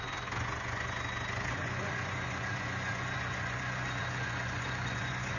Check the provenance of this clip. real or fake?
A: fake